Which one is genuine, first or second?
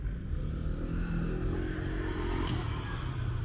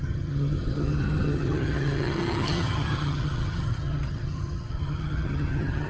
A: first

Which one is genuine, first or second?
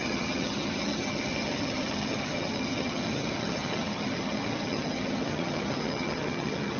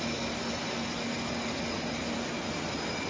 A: second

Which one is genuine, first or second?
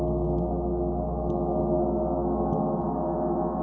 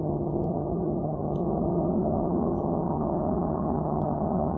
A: first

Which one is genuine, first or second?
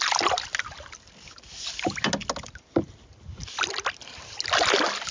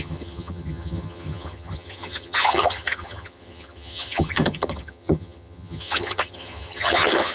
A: first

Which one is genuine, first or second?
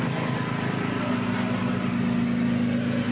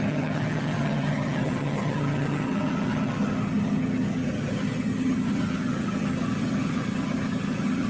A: first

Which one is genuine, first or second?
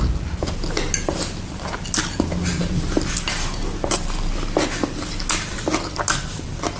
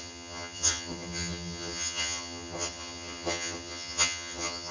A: first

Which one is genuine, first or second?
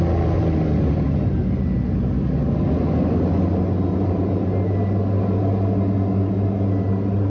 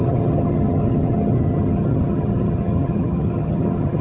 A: first